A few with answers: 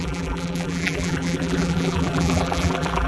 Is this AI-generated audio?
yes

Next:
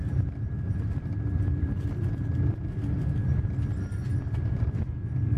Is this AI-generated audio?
yes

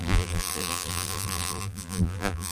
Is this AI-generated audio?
yes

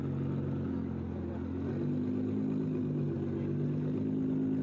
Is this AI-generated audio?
no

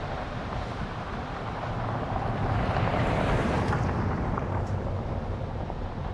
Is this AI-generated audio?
yes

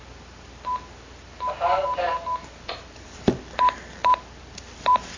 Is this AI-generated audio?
yes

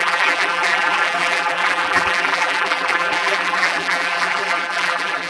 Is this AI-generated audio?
yes